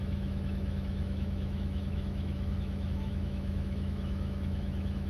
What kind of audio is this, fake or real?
fake